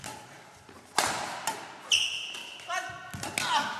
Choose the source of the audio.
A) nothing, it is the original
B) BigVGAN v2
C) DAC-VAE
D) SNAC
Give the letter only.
A